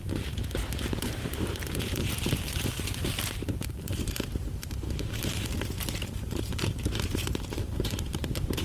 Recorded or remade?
remade